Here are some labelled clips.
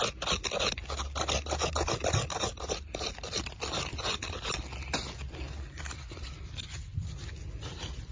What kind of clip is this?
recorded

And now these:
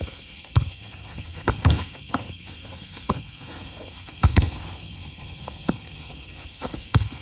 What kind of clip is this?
remade